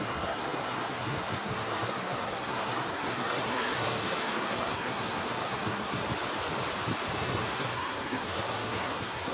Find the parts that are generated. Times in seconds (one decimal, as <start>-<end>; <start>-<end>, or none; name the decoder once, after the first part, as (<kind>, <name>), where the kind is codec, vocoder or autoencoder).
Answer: 0.0-6.0 (codec, SNAC); 7.1-9.3